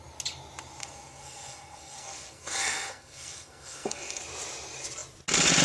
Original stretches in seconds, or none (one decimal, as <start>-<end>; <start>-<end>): 0.0-0.8; 4.2-5.6